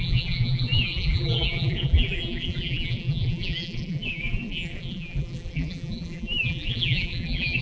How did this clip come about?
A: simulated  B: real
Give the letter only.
A